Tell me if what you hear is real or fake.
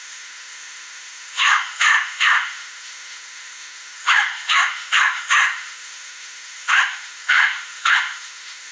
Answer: fake